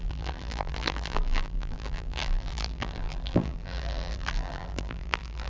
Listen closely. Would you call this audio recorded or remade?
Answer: remade